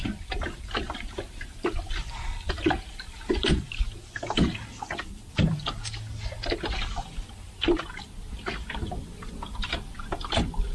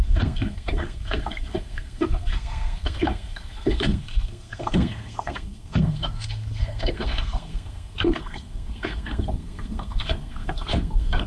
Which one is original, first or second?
first